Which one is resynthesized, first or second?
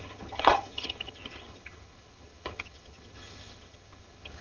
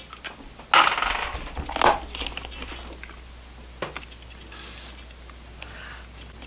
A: first